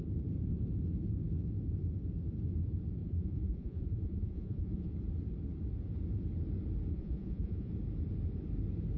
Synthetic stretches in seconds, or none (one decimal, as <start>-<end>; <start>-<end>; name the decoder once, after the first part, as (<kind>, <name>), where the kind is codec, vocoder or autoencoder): 3.0-4.9 (vocoder, Vocos); 6.9-7.7